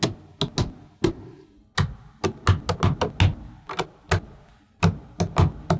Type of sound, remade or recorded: recorded